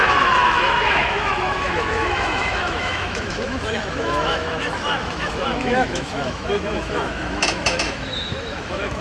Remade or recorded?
remade